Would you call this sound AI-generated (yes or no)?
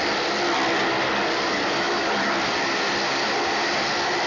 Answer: yes